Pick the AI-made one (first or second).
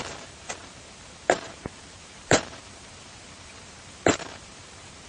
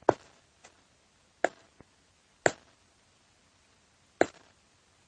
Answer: first